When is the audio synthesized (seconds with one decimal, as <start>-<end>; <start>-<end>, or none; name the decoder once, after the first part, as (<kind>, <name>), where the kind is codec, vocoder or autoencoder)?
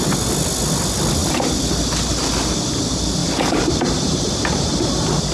3.2-3.7 (vocoder, BigVGAN v2)